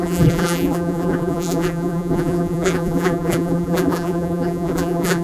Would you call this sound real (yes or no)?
no